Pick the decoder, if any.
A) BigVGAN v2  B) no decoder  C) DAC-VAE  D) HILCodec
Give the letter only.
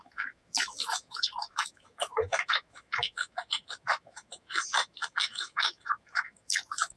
C